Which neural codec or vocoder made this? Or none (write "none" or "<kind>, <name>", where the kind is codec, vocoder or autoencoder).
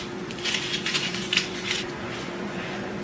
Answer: vocoder, Vocos